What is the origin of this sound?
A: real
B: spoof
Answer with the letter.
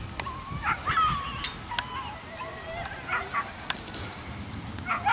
A